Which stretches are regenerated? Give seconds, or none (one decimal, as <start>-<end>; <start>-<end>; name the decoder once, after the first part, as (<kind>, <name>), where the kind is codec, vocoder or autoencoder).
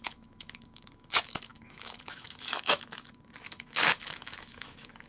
0.0-5.1 (autoencoder, DAC-VAE)